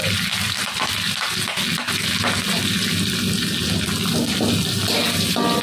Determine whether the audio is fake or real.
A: real